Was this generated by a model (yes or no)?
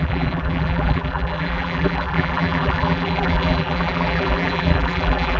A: yes